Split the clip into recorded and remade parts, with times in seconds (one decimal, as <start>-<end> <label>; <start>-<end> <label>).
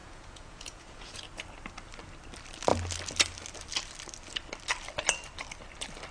0.0-1.2 remade; 1.2-6.1 recorded